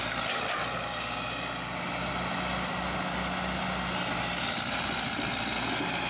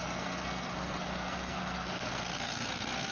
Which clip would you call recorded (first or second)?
first